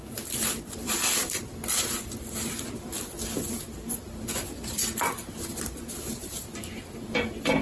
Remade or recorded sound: remade